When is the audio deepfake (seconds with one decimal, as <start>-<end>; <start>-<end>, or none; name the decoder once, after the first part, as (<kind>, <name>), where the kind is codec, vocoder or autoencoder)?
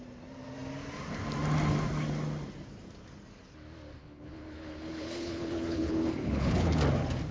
4.0-6.8 (codec, HILCodec)